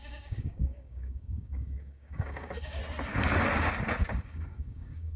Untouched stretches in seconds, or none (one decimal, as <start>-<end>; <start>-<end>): 2.8-4.1